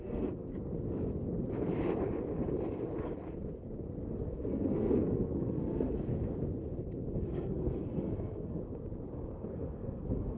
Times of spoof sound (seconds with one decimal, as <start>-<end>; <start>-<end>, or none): 0.0-0.5; 4.2-6.1; 7.1-8.6; 9.1-10.4

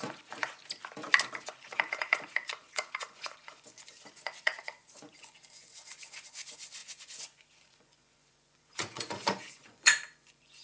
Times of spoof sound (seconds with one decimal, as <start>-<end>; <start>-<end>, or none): 0.0-0.6; 1.4-10.6